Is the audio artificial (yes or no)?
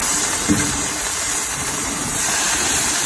yes